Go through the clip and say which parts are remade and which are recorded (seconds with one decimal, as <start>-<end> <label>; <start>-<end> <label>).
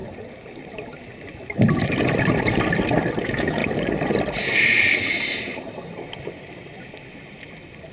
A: 0.0-3.2 recorded; 3.2-3.6 remade; 3.6-7.9 recorded